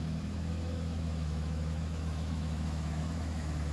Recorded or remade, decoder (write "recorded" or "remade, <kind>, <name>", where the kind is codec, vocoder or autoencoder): remade, autoencoder, DAC-VAE